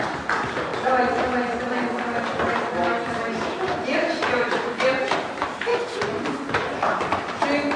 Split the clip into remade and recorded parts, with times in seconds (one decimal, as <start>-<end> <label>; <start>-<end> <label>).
0.0-0.7 remade; 0.7-1.6 recorded; 1.6-5.7 remade; 5.7-7.8 recorded